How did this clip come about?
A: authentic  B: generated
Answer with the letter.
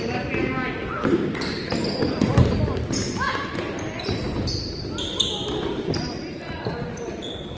A